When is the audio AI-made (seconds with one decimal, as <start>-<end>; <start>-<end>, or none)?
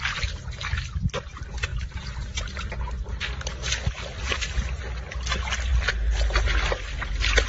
1.7-2.7